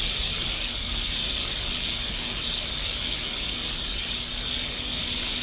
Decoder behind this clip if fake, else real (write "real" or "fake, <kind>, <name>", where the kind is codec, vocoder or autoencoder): fake, codec, DAC